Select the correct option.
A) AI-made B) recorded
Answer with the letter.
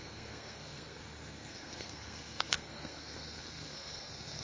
A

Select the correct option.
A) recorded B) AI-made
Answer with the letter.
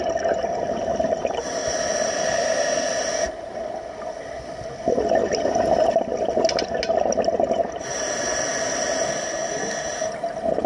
A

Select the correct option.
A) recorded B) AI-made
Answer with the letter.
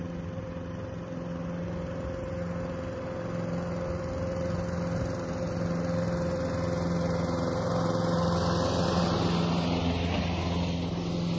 A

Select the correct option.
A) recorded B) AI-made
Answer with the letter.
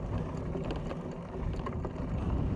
A